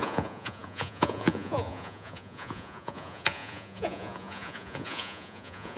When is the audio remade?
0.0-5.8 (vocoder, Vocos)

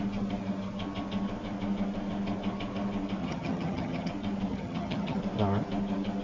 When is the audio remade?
3.2-4.1 (vocoder, HiFi-GAN); 4.5-5.2